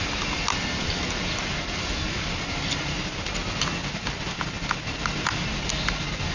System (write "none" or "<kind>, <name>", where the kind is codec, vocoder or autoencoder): none